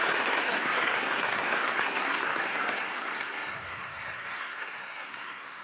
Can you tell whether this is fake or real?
fake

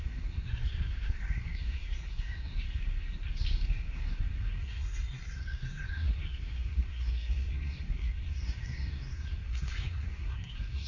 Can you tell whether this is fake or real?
fake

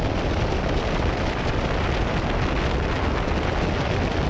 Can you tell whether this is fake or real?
real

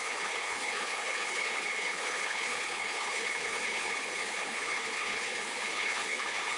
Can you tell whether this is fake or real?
fake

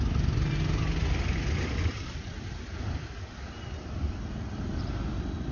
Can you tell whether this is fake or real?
real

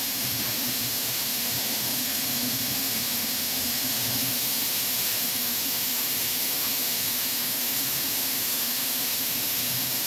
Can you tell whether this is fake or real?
fake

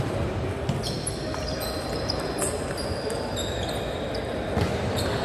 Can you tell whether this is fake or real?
fake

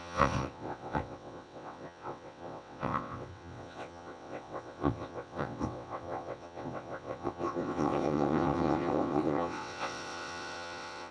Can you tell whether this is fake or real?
fake